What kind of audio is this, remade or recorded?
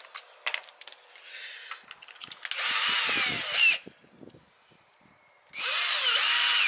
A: recorded